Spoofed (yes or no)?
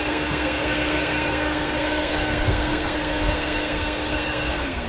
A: yes